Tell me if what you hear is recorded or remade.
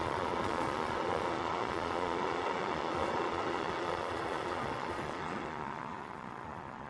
remade